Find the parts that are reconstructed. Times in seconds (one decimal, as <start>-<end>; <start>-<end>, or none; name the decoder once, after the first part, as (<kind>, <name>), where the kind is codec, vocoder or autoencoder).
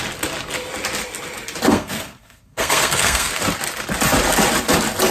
1.7-3.4 (codec, SNAC)